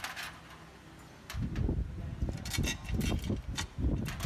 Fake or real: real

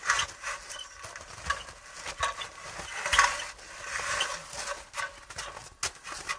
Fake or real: real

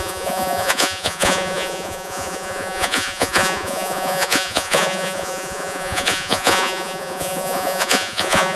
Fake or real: fake